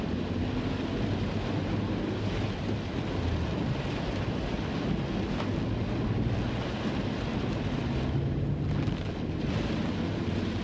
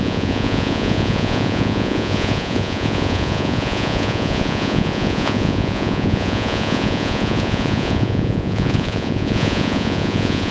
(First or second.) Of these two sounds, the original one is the first